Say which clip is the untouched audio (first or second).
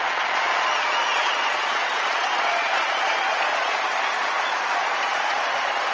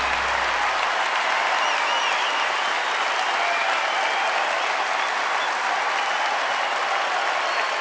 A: second